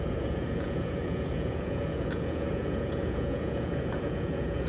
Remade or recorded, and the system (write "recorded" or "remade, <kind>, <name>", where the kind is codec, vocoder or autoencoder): remade, vocoder, Vocos